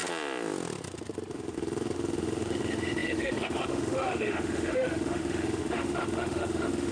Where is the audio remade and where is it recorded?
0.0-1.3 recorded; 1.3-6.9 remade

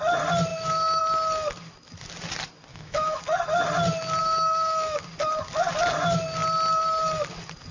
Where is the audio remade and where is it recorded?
0.0-0.5 recorded; 0.5-1.0 remade; 1.0-2.7 recorded; 2.7-3.2 remade; 3.2-4.2 recorded; 4.2-5.0 remade; 5.0-7.7 recorded

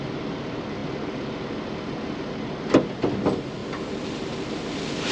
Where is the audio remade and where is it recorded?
0.0-5.1 recorded

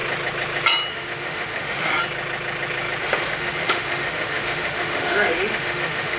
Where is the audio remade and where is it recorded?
0.0-0.9 recorded; 0.9-1.9 remade; 1.9-3.0 recorded; 3.0-6.2 remade

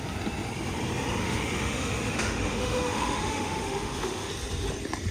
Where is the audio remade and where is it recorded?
0.0-1.2 recorded; 1.2-4.3 remade; 4.3-5.1 recorded

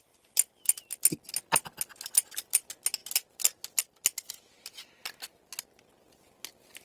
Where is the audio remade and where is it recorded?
0.0-6.8 recorded

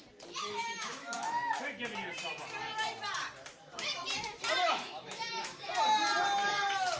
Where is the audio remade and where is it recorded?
0.0-0.6 recorded; 0.6-1.8 remade; 1.8-4.6 recorded; 4.6-5.7 remade; 5.7-7.0 recorded